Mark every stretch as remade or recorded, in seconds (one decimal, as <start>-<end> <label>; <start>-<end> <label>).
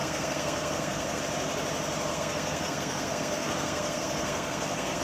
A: 0.0-1.2 remade; 1.2-2.1 recorded; 2.1-5.0 remade